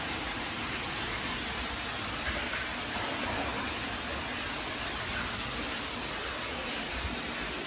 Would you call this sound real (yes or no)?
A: yes